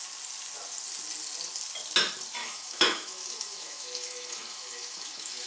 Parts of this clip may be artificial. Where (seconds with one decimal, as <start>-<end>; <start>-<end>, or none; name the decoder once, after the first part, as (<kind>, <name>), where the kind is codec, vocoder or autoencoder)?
2.4-5.5 (autoencoder, DAC-VAE)